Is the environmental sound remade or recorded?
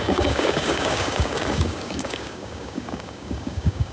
remade